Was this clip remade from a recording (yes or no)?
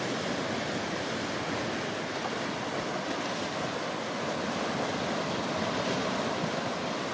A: no